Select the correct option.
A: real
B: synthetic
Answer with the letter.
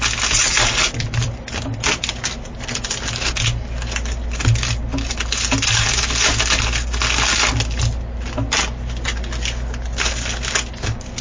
A